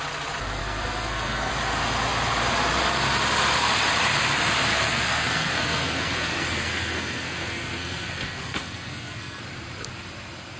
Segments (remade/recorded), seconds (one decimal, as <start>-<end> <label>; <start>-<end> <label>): 0.0-0.6 recorded; 0.6-1.5 remade; 1.5-4.7 recorded; 4.7-9.4 remade; 9.4-10.6 recorded